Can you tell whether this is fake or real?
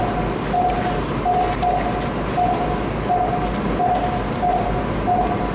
real